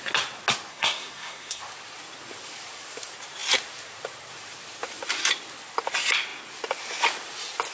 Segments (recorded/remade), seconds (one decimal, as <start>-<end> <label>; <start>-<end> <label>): 0.0-0.7 recorded; 0.7-1.6 remade; 1.6-7.7 recorded